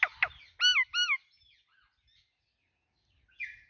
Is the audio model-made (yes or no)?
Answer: no